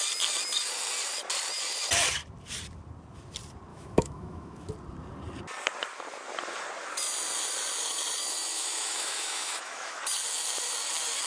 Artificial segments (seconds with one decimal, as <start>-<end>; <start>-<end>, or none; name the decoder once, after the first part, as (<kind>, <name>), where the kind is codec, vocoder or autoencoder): 3.7-4.7 (autoencoder, DAC-VAE); 8.5-10.0